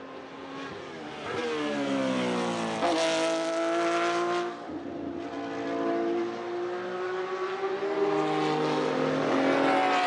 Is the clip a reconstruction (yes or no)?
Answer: no